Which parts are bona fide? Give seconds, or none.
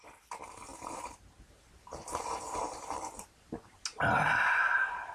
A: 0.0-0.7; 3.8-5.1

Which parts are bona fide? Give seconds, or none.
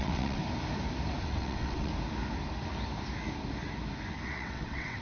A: 0.4-1.2; 1.9-4.1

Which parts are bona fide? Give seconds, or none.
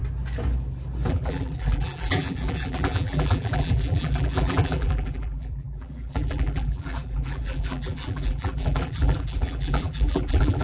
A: 0.0-1.1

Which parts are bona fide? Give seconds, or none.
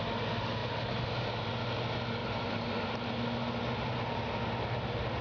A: 0.0-0.6; 1.5-2.2; 3.2-5.2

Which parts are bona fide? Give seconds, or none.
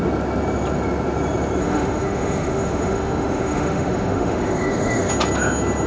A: 0.0-1.6; 5.1-5.9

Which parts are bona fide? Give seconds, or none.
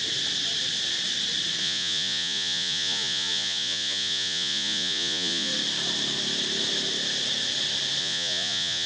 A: 0.0-1.6; 5.5-8.0